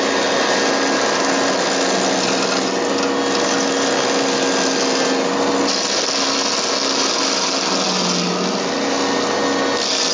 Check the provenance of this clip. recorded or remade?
recorded